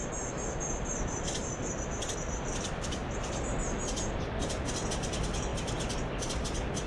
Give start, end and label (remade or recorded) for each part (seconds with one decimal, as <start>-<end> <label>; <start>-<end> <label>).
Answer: 0.0-0.5 recorded; 0.5-1.4 remade; 1.4-2.5 recorded; 2.5-3.0 remade; 3.0-4.1 recorded; 4.1-5.5 remade; 5.5-6.9 recorded